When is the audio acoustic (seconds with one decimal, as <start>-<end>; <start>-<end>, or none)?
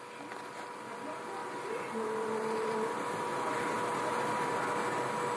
0.0-1.4; 4.6-5.4